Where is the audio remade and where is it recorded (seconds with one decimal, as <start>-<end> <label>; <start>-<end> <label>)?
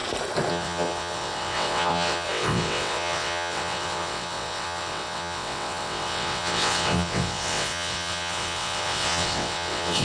0.0-0.5 recorded; 0.5-10.0 remade